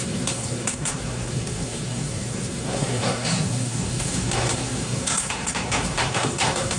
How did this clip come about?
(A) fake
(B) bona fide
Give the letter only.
A